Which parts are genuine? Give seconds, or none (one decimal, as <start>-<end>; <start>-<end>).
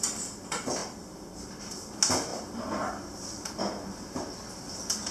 0.0-5.1